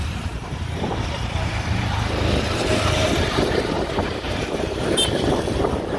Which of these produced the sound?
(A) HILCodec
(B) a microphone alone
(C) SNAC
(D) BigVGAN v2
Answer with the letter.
D